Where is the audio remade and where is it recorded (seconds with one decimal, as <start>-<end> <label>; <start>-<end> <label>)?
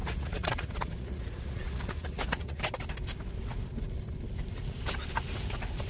0.0-2.6 remade; 2.6-5.9 recorded